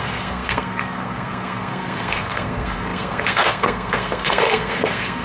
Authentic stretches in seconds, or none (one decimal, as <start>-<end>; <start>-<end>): none